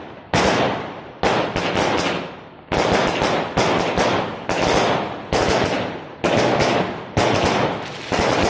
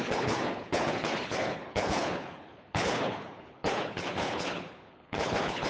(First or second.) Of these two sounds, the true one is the first